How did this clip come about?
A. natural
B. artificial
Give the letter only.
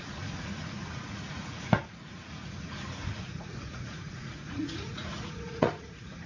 B